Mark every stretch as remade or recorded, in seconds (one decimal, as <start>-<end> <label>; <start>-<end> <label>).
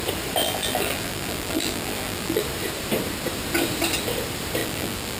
0.0-0.4 recorded; 0.4-2.4 remade; 2.4-4.6 recorded; 4.6-5.2 remade